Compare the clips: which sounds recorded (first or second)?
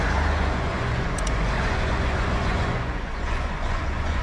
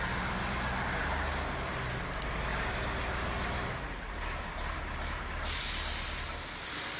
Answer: second